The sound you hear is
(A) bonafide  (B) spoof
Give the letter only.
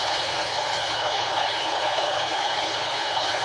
B